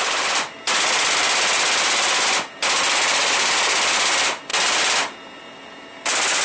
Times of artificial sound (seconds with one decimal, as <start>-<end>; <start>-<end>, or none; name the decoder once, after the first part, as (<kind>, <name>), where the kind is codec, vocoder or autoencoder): none